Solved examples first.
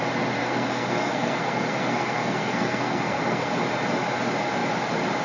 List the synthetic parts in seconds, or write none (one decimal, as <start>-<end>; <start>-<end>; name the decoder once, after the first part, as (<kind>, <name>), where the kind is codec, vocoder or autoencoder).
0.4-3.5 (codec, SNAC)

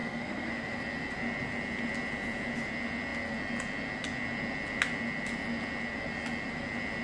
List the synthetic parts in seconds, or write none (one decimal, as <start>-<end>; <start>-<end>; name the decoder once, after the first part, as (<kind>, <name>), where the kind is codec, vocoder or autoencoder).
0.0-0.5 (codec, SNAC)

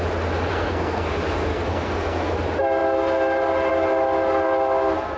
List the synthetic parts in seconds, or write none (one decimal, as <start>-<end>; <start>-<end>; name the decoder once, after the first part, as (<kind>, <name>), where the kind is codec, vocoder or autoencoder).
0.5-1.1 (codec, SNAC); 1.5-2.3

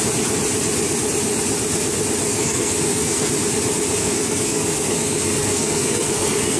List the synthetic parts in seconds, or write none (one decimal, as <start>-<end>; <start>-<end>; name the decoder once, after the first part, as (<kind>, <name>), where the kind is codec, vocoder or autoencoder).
2.3-3.3 (codec, SNAC); 4.0-6.6

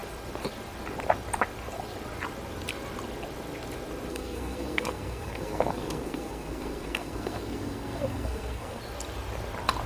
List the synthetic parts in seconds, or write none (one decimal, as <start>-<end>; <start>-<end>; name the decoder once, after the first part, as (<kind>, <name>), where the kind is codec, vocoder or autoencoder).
4.1-8.8 (codec, SNAC)

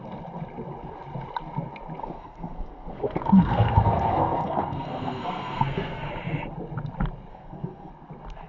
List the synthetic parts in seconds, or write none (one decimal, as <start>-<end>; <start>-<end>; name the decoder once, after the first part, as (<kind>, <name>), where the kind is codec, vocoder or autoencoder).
2.0-6.1 (codec, SNAC); 7.3-7.9

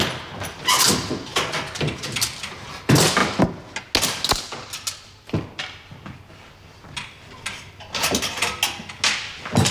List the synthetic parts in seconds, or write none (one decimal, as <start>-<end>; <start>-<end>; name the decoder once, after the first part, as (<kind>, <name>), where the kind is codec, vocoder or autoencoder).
none

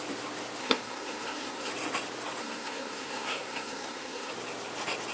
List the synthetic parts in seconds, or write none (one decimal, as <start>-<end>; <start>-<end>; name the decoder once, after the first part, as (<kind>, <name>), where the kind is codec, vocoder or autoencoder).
0.6-1.7 (codec, SNAC); 2.4-4.3